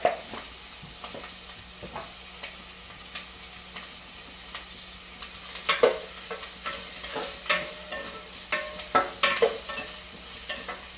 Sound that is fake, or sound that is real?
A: real